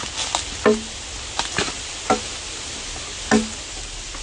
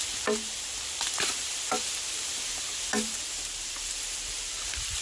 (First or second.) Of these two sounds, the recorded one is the first